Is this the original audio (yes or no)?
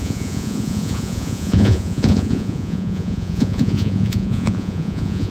no